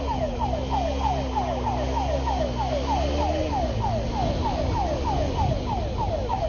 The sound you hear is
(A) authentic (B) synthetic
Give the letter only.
A